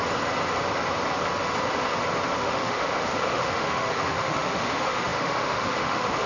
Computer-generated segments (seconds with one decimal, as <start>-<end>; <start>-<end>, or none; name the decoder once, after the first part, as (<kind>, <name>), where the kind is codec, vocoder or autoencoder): 2.4-6.3 (autoencoder, DAC-VAE)